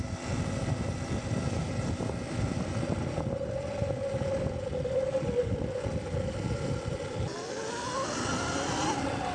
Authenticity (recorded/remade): recorded